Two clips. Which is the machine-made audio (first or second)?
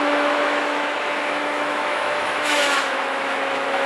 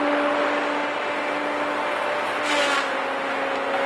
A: first